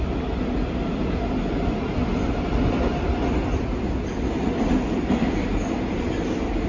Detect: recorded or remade recorded